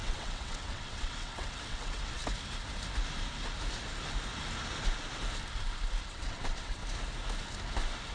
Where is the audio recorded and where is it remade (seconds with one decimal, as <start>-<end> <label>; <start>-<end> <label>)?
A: 0.0-2.2 remade; 2.2-6.0 recorded; 6.0-6.8 remade; 6.8-8.1 recorded

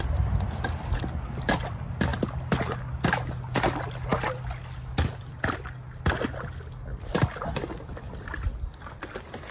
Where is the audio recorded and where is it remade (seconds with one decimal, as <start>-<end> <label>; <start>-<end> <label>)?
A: 0.0-9.5 recorded

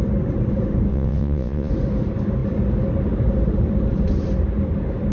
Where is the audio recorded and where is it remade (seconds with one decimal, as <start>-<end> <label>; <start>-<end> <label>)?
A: 0.0-0.9 recorded; 0.9-1.7 remade; 1.7-5.1 recorded

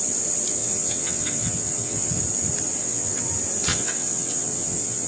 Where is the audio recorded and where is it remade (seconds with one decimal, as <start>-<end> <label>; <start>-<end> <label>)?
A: 0.0-0.6 recorded; 0.6-2.2 remade; 2.2-2.8 recorded; 2.8-3.3 remade; 3.3-3.7 recorded; 3.7-5.1 remade

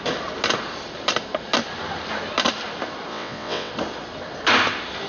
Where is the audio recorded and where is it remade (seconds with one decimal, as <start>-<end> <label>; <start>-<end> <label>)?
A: 0.0-3.1 recorded; 3.1-3.7 remade; 3.7-5.1 recorded

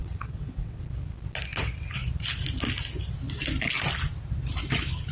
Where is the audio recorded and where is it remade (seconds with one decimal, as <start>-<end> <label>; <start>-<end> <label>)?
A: 0.0-0.8 remade; 0.8-5.1 recorded